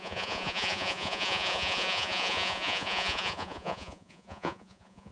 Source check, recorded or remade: remade